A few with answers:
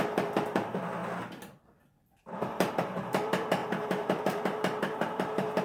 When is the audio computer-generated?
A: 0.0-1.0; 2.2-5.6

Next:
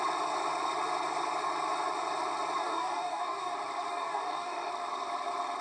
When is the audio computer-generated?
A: 2.6-3.5; 3.9-4.7

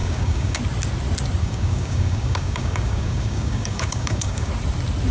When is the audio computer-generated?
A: 0.0-0.6; 1.4-4.5

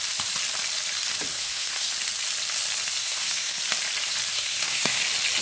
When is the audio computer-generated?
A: 1.3-1.9; 3.0-3.6; 4.3-5.0

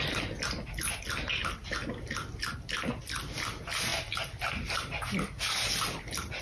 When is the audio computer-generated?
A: none

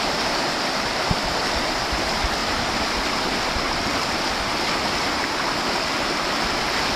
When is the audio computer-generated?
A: none

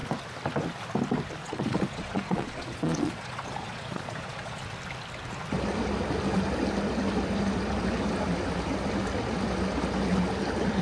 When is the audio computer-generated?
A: 1.4-4.6

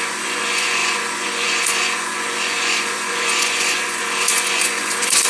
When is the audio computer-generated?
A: 0.0-5.3